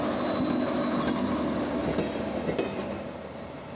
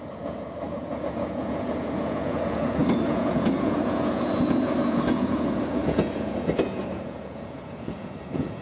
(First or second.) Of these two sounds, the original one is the first